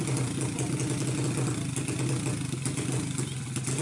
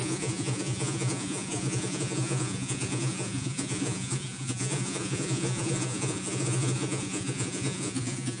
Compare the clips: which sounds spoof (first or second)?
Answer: second